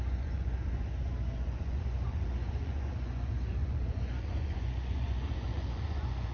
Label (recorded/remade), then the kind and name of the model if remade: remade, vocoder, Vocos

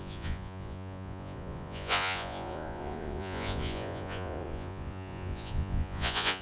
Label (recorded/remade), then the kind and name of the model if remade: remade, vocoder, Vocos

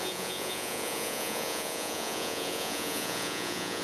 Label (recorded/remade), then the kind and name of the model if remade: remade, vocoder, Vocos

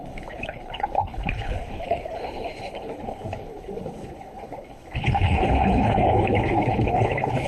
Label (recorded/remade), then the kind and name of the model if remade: remade, codec, HILCodec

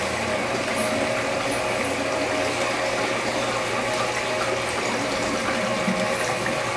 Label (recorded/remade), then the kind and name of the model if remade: recorded